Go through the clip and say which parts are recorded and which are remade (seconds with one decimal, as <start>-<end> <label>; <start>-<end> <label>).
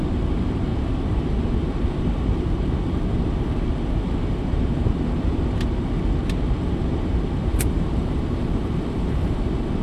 0.0-7.5 recorded; 7.5-9.4 remade; 9.4-9.8 recorded